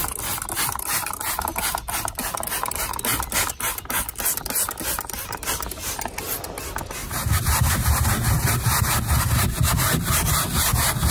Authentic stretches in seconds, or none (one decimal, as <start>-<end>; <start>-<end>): 0.0-7.0; 8.9-11.1